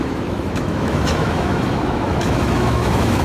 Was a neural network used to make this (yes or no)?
yes